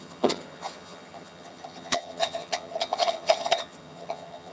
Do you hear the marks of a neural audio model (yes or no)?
yes